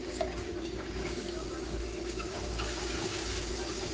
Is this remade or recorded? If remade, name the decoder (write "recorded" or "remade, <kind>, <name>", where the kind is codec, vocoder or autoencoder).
remade, codec, DAC